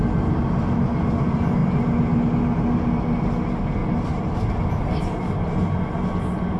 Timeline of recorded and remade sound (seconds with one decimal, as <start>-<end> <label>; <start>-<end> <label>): 0.0-6.6 recorded